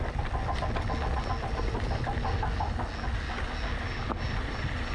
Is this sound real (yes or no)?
yes